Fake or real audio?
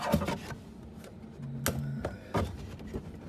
real